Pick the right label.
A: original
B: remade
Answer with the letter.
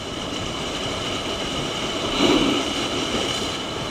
A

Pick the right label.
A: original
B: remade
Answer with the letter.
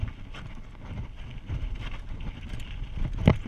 A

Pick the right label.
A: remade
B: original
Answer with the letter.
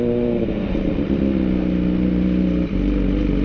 B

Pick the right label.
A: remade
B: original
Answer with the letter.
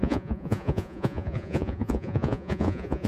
A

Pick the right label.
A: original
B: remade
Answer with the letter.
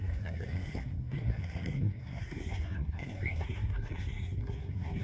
B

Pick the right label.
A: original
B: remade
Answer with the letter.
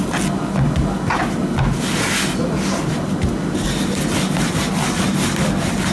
A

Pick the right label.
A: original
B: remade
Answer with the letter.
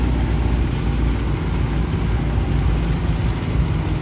A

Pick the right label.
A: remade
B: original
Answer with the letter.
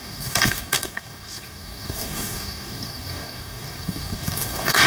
A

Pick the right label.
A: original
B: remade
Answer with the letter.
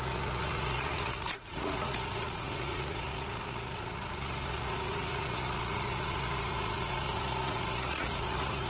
B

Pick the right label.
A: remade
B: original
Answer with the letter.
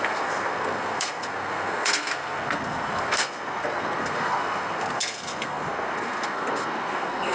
A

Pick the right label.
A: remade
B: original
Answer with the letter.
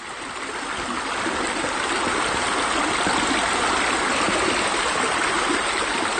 B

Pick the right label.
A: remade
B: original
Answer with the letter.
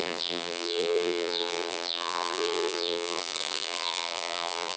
A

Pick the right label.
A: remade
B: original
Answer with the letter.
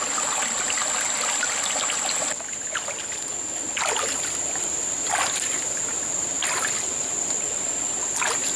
B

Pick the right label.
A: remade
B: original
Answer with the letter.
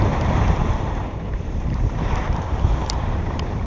A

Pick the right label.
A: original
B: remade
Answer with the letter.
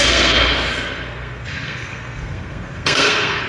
B